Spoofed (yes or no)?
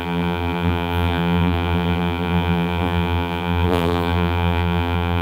yes